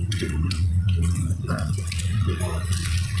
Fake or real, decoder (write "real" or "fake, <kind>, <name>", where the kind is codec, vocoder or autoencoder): fake, vocoder, Vocos